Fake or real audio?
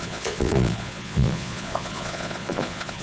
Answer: fake